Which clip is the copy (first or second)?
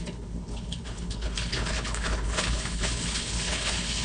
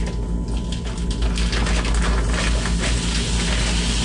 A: first